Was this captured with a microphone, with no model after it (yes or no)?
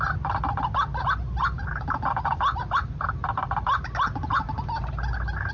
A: yes